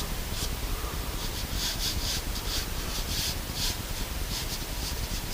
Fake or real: fake